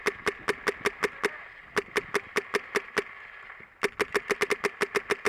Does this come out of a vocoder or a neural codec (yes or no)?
no